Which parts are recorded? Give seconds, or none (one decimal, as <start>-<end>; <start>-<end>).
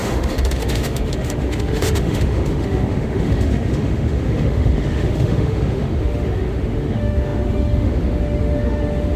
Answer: none